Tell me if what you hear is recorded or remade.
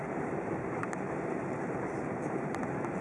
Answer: remade